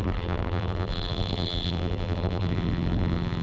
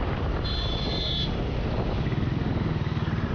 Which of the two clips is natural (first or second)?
second